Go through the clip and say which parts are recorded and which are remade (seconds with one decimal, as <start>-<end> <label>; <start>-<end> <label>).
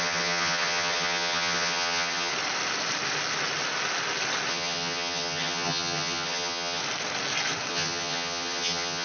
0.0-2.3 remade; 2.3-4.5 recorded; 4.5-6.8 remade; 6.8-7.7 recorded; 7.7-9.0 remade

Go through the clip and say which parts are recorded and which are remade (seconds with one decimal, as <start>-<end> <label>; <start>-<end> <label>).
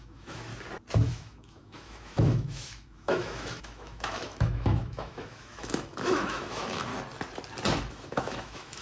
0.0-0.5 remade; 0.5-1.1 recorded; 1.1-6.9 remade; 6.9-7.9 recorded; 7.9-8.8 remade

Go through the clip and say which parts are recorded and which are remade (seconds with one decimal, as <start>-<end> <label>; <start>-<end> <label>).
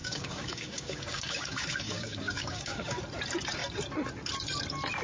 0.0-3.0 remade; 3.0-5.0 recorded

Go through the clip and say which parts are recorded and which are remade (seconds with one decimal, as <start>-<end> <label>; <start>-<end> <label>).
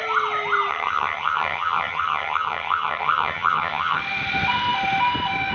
0.0-0.7 recorded; 0.7-4.0 remade; 4.0-5.5 recorded